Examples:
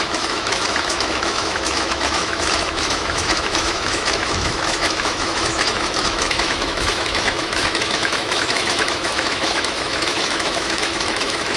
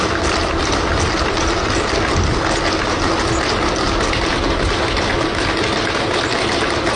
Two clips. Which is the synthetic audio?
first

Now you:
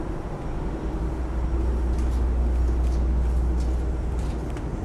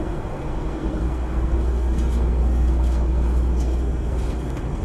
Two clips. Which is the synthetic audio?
second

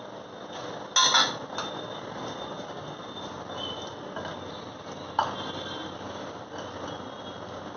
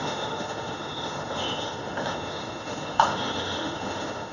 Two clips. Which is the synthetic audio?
second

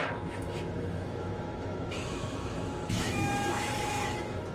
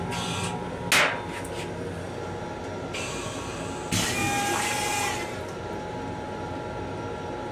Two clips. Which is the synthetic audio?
first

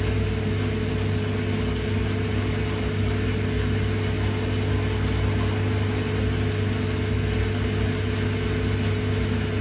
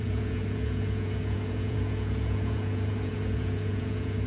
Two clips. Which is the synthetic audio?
second